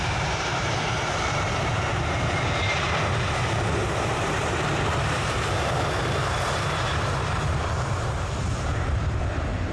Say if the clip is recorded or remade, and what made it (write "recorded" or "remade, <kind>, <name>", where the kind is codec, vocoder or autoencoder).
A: remade, vocoder, BigVGAN v2